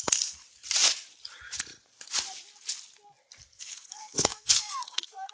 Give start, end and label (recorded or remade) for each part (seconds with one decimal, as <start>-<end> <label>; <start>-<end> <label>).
0.0-0.4 remade; 0.4-3.6 recorded; 3.6-5.3 remade